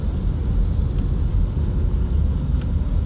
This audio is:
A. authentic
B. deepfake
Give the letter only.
A